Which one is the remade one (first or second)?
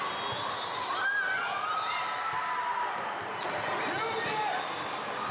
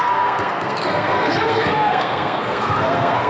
second